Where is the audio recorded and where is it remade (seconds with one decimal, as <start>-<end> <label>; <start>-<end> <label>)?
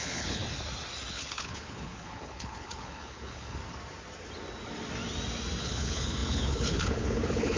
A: 0.0-0.4 remade; 0.4-1.1 recorded; 1.1-3.6 remade; 3.6-5.6 recorded; 5.6-7.6 remade